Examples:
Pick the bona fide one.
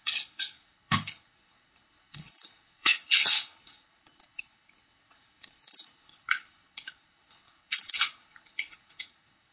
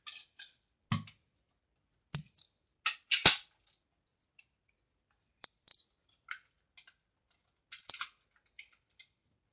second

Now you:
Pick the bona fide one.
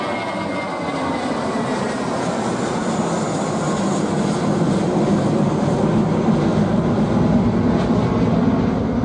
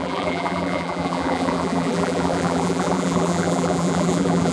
first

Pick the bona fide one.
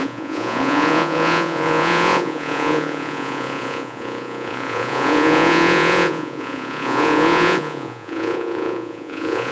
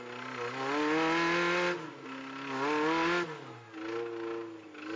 second